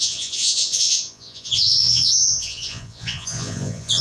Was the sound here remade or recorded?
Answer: remade